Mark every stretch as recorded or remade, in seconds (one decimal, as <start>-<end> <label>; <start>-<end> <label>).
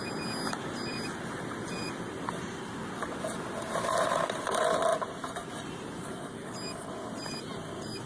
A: 0.0-8.1 recorded